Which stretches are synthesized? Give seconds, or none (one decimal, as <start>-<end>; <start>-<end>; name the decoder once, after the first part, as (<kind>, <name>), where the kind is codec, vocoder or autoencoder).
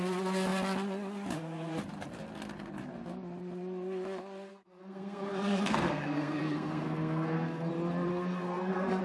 4.5-7.7 (codec, SNAC); 8.1-9.0